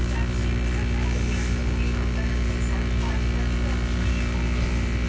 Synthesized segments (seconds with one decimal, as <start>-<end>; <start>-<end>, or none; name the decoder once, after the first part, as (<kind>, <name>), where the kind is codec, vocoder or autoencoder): none